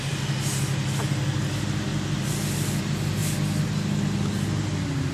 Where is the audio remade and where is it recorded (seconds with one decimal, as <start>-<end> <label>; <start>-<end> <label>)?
0.0-1.9 recorded; 1.9-2.8 remade; 2.8-3.2 recorded; 3.2-5.1 remade